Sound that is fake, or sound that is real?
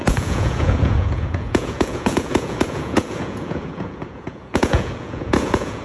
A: fake